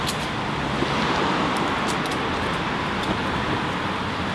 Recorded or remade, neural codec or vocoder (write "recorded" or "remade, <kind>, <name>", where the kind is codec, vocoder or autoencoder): recorded